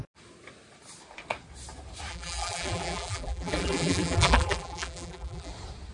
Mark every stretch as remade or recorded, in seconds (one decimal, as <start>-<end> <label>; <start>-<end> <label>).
0.0-2.1 recorded; 2.1-5.5 remade; 5.5-5.9 recorded